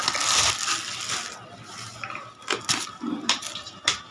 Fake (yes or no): no